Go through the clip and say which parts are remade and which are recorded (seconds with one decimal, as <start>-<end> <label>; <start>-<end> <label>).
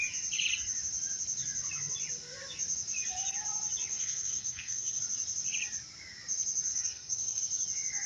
0.0-3.9 recorded; 3.9-5.0 remade; 5.0-6.7 recorded; 6.7-7.4 remade; 7.4-8.1 recorded